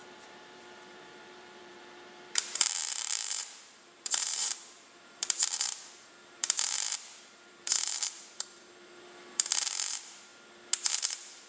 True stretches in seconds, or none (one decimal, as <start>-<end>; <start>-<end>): 10.3-10.9